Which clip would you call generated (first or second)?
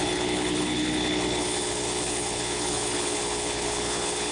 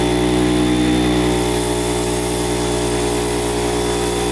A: first